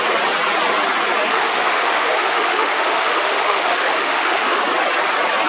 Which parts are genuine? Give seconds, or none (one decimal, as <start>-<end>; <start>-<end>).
0.0-1.3; 4.6-5.5